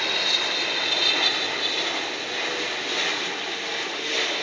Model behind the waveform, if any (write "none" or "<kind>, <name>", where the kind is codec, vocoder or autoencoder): none